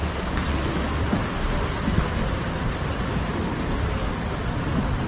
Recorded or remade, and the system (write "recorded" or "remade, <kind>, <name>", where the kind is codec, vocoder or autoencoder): recorded